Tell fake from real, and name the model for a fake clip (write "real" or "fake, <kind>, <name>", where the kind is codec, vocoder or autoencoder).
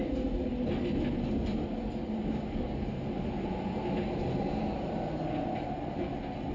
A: real